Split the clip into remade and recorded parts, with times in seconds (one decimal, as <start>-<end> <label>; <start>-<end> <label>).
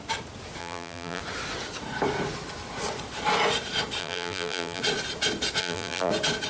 0.0-0.6 recorded; 0.6-1.2 remade; 1.2-4.0 recorded; 4.0-4.8 remade; 4.8-5.6 recorded; 5.6-6.1 remade; 6.1-6.5 recorded